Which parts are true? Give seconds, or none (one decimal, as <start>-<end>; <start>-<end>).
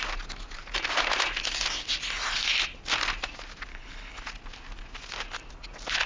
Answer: 0.0-3.7; 4.2-6.1